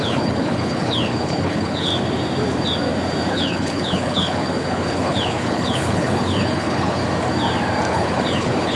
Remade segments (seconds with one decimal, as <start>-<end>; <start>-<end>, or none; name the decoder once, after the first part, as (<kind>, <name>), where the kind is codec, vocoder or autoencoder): 0.0-1.9 (codec, HILCodec); 3.3-7.0; 7.9-8.8